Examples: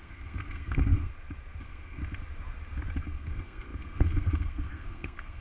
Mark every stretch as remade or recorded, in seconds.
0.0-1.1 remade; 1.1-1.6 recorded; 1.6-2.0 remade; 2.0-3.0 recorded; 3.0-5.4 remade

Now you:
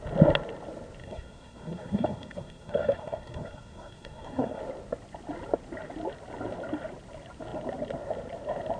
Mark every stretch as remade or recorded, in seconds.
0.0-1.0 recorded; 1.0-4.6 remade; 4.6-8.8 recorded

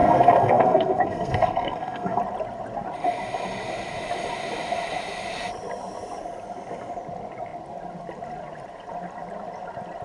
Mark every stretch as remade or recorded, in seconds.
0.0-2.2 remade; 2.2-10.0 recorded